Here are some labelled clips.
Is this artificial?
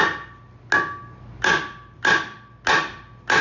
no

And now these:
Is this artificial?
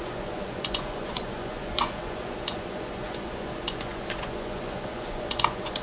yes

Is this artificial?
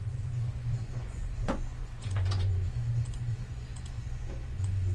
yes